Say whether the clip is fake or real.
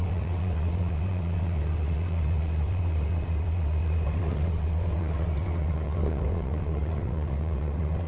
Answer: fake